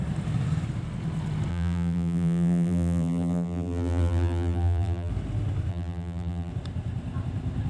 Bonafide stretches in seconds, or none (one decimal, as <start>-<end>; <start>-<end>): 0.0-1.5; 5.1-5.7; 6.5-7.7